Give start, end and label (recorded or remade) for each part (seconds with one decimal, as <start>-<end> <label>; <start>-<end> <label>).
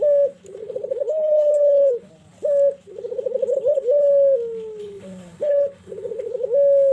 0.0-0.6 recorded; 0.6-2.1 remade; 2.1-3.5 recorded; 3.5-4.1 remade; 4.1-4.8 recorded; 4.8-6.3 remade; 6.3-6.9 recorded